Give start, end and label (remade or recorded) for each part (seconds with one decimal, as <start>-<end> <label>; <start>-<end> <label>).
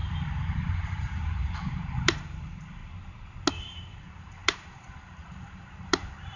0.0-2.8 remade; 2.8-3.5 recorded; 3.5-6.4 remade